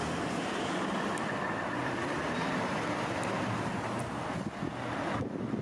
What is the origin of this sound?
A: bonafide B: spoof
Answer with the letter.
A